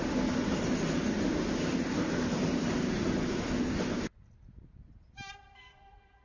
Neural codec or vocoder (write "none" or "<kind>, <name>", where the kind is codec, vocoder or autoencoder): none